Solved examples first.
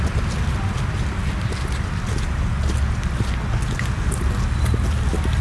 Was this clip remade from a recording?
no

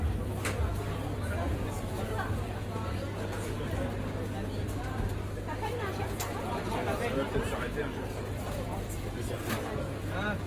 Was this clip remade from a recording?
no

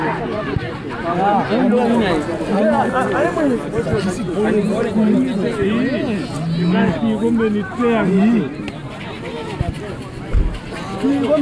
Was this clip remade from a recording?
no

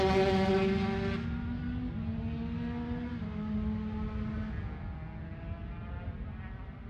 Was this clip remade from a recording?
no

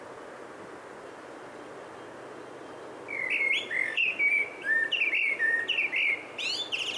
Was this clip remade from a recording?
no